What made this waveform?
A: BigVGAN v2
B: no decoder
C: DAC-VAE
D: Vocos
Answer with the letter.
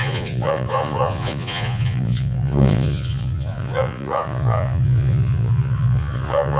D